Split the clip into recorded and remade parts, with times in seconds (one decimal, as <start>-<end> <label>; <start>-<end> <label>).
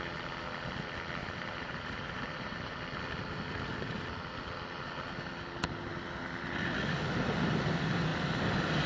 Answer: 0.0-1.2 recorded; 1.2-2.8 remade; 2.8-8.9 recorded